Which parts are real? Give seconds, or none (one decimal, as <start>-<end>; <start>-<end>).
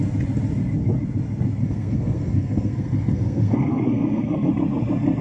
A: 0.0-1.6; 4.5-5.2